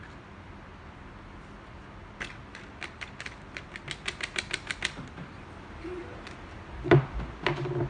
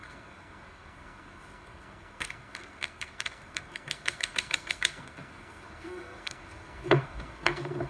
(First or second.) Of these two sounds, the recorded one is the first